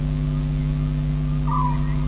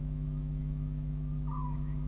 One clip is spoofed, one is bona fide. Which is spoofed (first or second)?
second